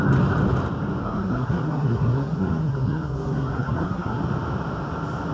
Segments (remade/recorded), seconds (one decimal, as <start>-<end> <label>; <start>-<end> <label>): 0.0-1.0 recorded; 1.0-4.2 remade; 4.2-5.3 recorded

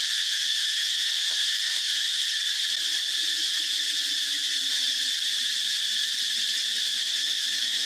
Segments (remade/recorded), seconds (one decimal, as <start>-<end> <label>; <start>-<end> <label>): 0.0-2.2 remade; 2.2-6.9 recorded; 6.9-7.9 remade

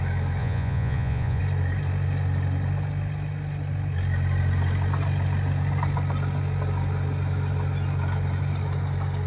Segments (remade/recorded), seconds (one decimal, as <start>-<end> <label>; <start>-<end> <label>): 0.0-0.4 recorded; 0.4-1.4 remade; 1.4-9.3 recorded